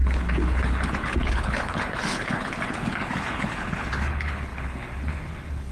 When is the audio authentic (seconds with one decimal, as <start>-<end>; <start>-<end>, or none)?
none